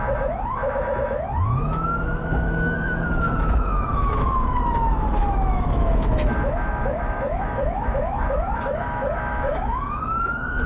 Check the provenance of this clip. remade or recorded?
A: remade